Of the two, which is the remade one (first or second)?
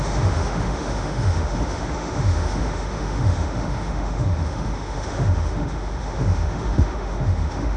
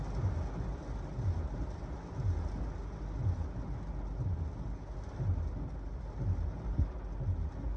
first